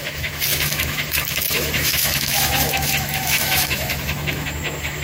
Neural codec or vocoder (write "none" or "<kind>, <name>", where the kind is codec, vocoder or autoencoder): autoencoder, DAC-VAE